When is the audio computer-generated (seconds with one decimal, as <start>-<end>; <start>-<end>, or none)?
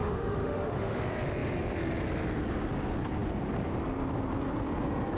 0.0-1.0